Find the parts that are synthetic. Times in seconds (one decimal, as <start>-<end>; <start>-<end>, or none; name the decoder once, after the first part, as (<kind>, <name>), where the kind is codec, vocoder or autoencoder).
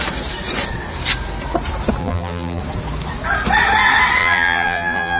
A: 2.0-2.6 (vocoder, BigVGAN v2); 4.2-5.2